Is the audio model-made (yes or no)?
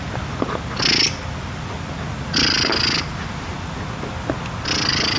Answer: no